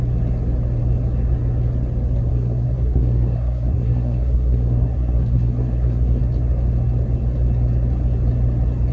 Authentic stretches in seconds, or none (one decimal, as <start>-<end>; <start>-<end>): 0.0-2.3; 6.2-8.9